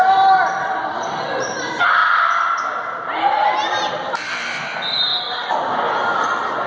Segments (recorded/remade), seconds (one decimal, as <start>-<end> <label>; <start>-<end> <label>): 0.0-2.0 remade; 2.0-3.9 recorded; 3.9-5.1 remade; 5.1-6.7 recorded